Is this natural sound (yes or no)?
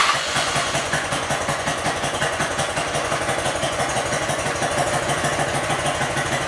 no